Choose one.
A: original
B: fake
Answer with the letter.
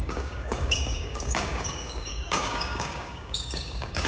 B